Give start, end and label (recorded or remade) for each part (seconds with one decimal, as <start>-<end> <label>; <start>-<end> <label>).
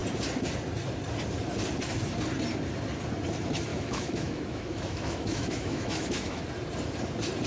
0.0-3.7 recorded; 3.7-6.4 remade; 6.4-7.5 recorded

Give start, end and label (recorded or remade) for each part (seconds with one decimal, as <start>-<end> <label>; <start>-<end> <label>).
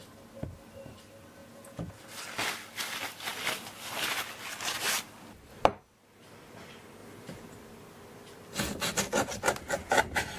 0.0-1.4 recorded; 1.4-1.9 remade; 1.9-10.4 recorded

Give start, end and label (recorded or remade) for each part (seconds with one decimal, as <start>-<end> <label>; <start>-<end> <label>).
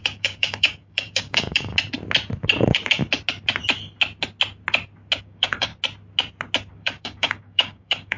0.0-1.7 remade; 1.7-5.2 recorded; 5.2-5.7 remade; 5.7-6.7 recorded; 6.7-8.2 remade